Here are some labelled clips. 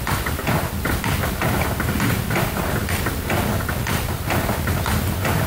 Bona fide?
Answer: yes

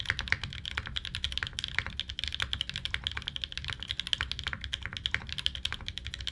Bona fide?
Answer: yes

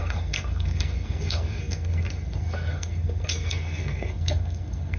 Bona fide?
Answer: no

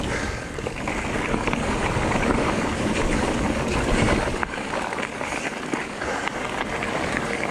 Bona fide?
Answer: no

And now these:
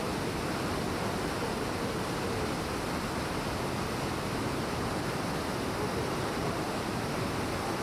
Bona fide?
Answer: yes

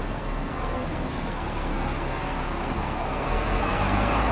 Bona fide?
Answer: no